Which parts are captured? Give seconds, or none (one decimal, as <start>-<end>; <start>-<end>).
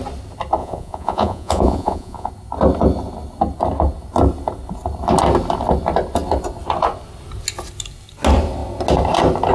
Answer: 0.0-0.6; 2.3-9.5